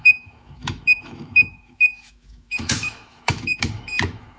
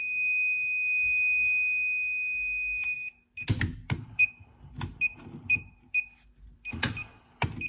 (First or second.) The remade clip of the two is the first